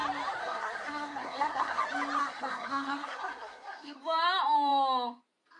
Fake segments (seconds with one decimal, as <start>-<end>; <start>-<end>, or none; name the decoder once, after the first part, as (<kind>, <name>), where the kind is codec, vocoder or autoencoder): 0.4-1.8 (codec, SNAC); 2.2-4.0